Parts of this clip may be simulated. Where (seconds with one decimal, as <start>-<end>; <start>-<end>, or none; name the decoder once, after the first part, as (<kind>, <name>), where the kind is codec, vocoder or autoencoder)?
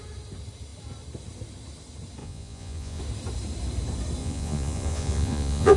2.2-3.0 (vocoder, Vocos); 4.2-5.8